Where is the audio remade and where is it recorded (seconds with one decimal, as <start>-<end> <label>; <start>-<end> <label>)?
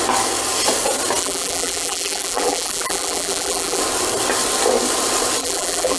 0.0-1.2 recorded; 1.2-3.8 remade; 3.8-5.4 recorded; 5.4-6.0 remade